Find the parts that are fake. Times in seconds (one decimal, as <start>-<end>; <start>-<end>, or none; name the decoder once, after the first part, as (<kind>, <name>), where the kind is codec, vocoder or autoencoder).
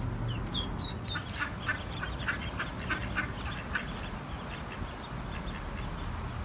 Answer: none